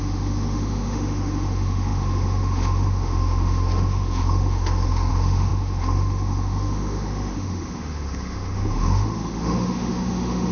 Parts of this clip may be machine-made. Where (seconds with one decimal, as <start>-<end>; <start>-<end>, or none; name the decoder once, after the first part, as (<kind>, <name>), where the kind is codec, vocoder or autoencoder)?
0.0-10.5 (autoencoder, DAC-VAE)